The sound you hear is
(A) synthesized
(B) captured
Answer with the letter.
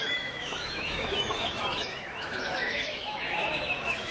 A